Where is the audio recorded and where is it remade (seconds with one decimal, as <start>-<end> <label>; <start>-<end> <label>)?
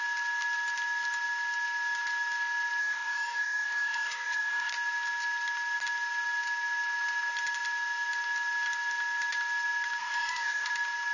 0.0-2.8 recorded; 2.8-4.7 remade; 4.7-10.0 recorded; 10.0-10.7 remade; 10.7-11.1 recorded